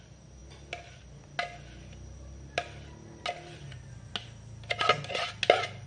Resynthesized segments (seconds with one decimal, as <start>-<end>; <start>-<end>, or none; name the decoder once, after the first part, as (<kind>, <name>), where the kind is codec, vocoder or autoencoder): none